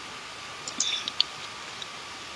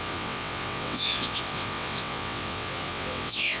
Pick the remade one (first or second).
second